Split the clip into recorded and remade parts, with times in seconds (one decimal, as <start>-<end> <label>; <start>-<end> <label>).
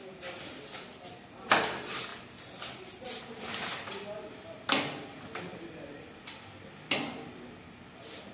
0.0-8.3 recorded